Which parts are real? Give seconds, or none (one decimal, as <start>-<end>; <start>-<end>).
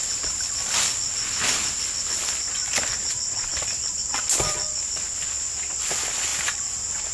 0.0-2.6; 4.6-6.3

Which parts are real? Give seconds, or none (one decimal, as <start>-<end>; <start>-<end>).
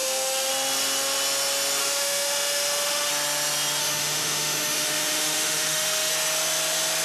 0.5-1.8; 3.1-3.8; 6.1-7.0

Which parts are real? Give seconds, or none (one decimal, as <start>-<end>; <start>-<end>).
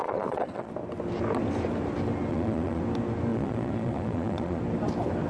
0.7-2.3; 2.8-3.3; 4.6-5.3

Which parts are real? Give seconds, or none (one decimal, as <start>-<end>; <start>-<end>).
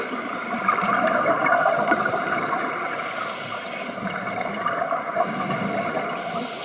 0.0-0.4; 4.4-6.6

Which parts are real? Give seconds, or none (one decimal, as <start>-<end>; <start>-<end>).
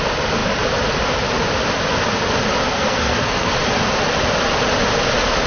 0.0-2.7; 3.5-5.5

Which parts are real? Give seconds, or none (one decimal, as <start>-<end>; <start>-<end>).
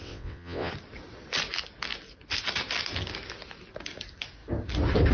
0.7-5.1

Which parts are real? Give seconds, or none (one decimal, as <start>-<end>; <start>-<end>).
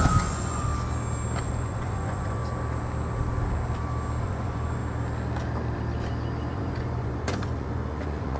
0.7-1.4; 2.4-4.2; 4.8-6.5